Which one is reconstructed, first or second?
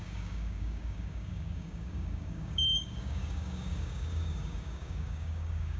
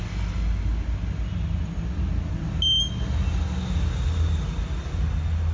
first